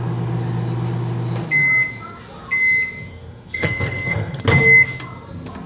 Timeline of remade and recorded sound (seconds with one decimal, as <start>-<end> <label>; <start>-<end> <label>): 0.0-3.1 recorded; 3.1-4.4 remade; 4.4-5.7 recorded